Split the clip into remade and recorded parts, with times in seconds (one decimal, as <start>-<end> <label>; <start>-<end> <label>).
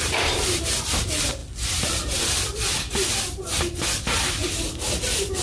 0.0-4.4 remade; 4.4-5.4 recorded